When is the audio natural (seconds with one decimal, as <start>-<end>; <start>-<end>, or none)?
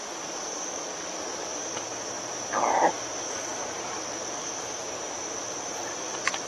0.0-1.9; 5.8-6.5